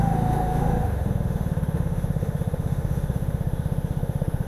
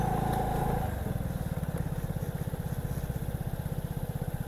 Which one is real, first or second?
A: second